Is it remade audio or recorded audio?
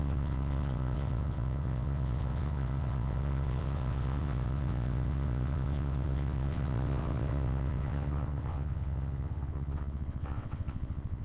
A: remade